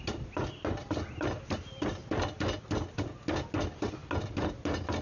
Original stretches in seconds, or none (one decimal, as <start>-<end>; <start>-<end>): 0.0-5.0